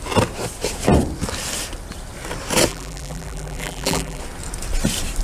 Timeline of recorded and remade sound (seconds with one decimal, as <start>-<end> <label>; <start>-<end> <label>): 0.0-2.7 recorded; 2.7-4.2 remade; 4.2-5.2 recorded